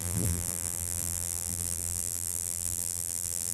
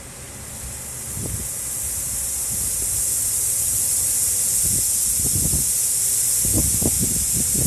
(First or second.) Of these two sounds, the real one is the second